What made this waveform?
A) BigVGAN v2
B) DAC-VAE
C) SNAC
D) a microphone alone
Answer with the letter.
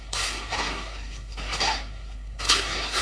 C